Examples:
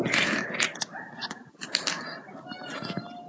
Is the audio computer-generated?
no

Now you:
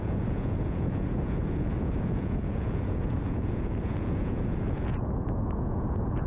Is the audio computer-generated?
yes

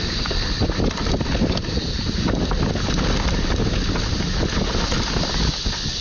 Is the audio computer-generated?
no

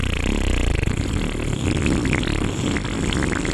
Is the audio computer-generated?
no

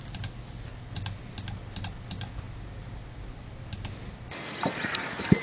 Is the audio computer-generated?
no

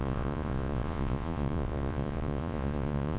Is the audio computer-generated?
yes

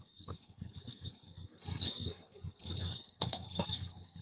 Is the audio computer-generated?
yes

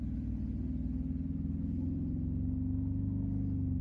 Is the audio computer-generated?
no